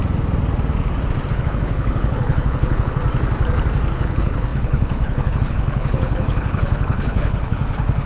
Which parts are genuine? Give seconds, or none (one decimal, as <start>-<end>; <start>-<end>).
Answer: 0.0-1.3; 3.0-3.9